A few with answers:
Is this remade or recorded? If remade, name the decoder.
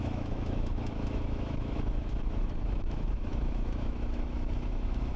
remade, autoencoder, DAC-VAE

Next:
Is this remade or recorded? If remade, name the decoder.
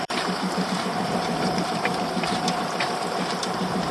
remade, vocoder, BigVGAN v2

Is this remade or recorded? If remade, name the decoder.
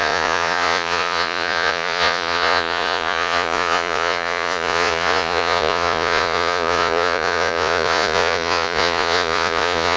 remade, vocoder, Vocos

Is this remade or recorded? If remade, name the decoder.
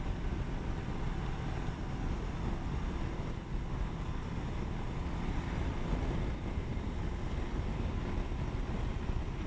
recorded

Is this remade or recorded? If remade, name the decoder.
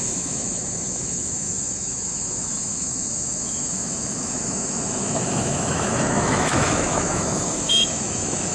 remade, autoencoder, DAC-VAE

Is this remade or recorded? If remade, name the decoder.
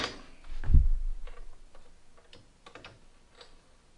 recorded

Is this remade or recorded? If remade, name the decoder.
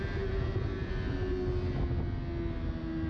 recorded